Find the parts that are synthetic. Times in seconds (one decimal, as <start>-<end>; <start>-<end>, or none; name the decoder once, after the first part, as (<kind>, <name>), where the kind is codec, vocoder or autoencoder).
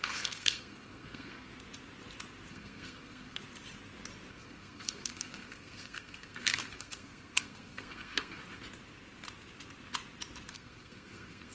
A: 0.0-1.5 (codec, SNAC); 2.5-3.4; 4.3-8.4; 10.5-11.5